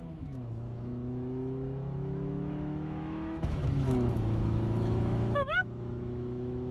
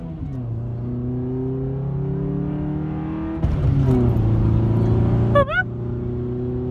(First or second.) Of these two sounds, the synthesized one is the first